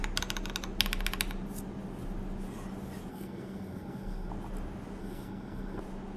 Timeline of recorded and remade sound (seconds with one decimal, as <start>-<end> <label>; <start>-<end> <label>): 0.0-3.1 recorded; 3.1-4.3 remade; 4.3-5.0 recorded; 5.0-5.8 remade; 5.8-6.2 recorded